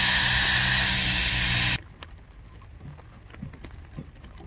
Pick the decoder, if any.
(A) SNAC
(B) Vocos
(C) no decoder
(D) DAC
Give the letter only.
C